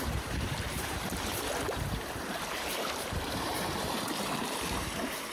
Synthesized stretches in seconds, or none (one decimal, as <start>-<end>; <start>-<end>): 0.0-5.3